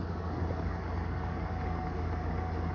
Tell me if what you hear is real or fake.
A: fake